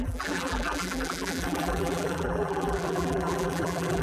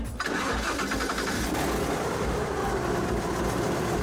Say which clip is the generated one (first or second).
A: first